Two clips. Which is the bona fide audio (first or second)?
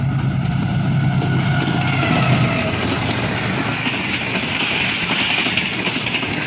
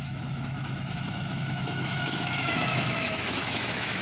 first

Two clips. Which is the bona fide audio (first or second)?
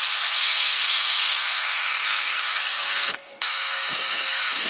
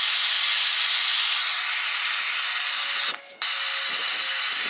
second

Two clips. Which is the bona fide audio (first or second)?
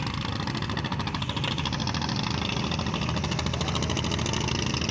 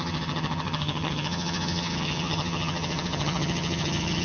first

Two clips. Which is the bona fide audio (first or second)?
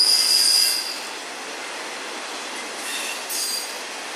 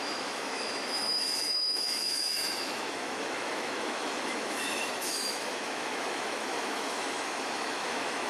first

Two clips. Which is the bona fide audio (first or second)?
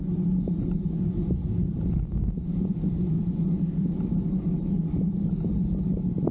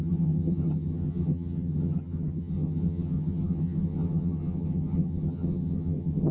first